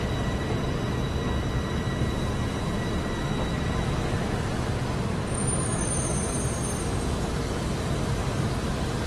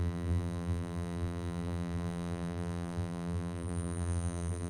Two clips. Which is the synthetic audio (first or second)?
second